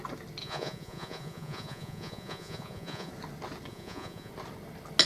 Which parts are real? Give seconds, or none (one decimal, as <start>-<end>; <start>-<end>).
0.0-0.4; 3.1-3.7; 4.3-5.1